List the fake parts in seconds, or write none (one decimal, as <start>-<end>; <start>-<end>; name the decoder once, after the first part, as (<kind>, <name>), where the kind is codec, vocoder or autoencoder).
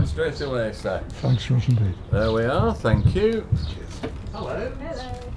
0.0-1.8 (codec, DAC); 3.2-3.6; 5.0-5.4